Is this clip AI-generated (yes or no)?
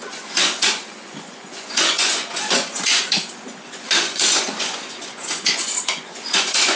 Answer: yes